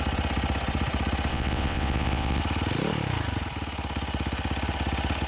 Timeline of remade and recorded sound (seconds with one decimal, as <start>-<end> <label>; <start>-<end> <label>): 0.0-1.3 recorded; 1.3-2.4 remade; 2.4-5.3 recorded